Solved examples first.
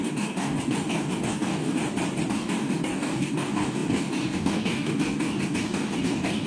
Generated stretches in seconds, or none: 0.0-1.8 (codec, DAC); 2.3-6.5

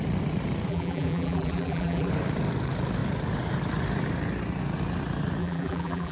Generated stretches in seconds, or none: 0.7-2.1 (vocoder, BigVGAN v2); 5.4-6.1

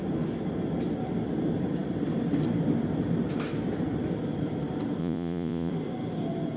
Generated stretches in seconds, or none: 5.0-5.7 (vocoder, Vocos)

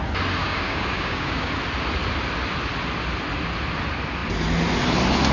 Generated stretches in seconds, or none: 0.4-1.5 (codec, DAC)

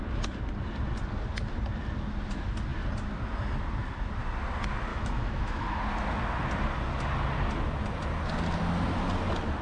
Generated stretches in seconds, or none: 4.9-5.8 (autoencoder, DAC-VAE)

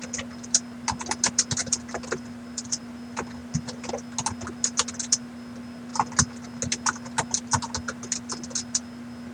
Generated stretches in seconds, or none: 1.6-2.8 (vocoder, BigVGAN v2); 3.4-3.9

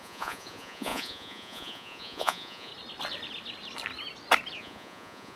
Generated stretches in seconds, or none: 0.0-2.7 (vocoder, Vocos); 4.6-5.4

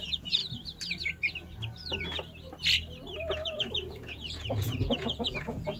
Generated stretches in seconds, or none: 0.0-0.4 (vocoder, Vocos); 3.9-5.8